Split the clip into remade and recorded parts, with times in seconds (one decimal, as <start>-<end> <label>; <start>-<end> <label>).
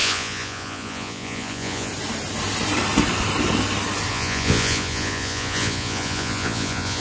0.0-1.9 remade; 1.9-4.1 recorded; 4.1-7.0 remade